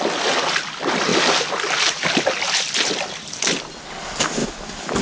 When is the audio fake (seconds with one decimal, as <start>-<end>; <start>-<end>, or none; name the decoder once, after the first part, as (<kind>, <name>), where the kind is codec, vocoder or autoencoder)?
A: 4.4-5.0 (vocoder, BigVGAN v2)